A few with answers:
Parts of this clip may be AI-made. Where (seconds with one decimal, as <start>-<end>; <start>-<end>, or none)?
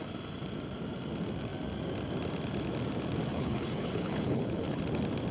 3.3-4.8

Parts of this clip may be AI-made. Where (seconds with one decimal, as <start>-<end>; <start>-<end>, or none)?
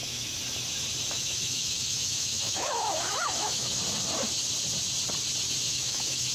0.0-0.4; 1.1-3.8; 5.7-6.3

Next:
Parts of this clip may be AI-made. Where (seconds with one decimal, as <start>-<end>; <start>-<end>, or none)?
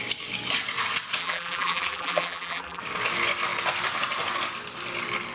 1.2-2.8